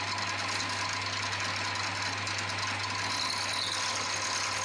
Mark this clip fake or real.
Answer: real